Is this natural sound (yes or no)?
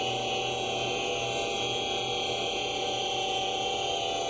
yes